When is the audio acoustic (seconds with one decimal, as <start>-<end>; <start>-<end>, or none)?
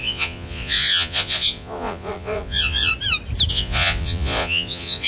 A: 2.9-3.5